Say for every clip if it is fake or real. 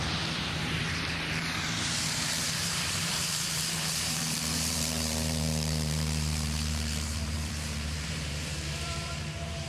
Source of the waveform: fake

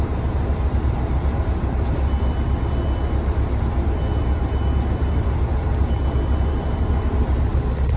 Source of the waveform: real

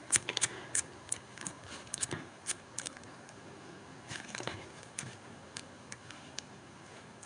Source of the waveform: fake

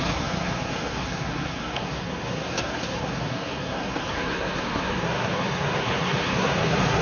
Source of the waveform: fake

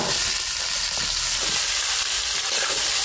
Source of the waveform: real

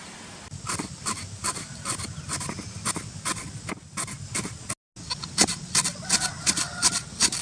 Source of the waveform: real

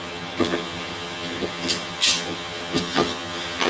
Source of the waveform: fake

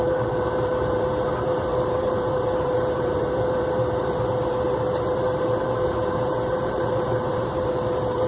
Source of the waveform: fake